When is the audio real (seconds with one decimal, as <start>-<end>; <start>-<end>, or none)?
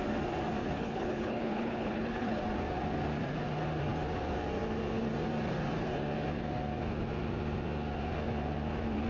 0.0-0.6; 2.4-9.1